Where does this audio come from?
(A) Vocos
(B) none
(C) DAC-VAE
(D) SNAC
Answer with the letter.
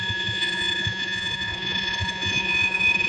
A